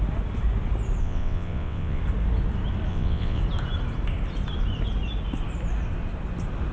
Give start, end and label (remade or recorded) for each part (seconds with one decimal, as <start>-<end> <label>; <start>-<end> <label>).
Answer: 0.0-1.0 recorded; 1.0-2.0 remade; 2.0-2.9 recorded; 2.9-3.4 remade; 3.4-6.7 recorded